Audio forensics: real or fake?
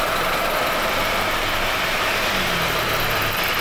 real